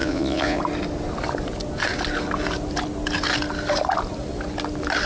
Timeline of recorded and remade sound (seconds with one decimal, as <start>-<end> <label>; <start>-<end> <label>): 0.0-0.6 remade; 0.6-5.1 recorded